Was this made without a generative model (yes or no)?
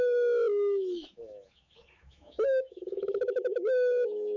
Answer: no